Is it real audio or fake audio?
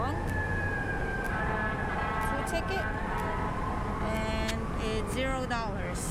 real